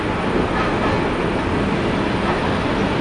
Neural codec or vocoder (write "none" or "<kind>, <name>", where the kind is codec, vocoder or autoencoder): none